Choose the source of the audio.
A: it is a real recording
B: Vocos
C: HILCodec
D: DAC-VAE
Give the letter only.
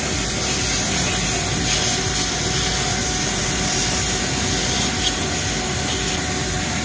A